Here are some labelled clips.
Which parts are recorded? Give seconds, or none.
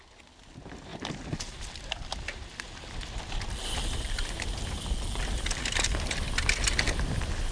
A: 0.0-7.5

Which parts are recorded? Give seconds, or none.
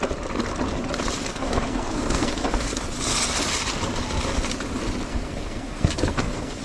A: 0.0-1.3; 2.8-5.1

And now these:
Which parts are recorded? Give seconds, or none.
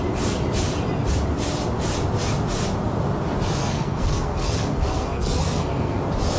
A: 0.0-3.6; 6.0-6.4